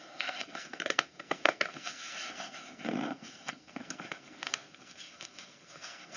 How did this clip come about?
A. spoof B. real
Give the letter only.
A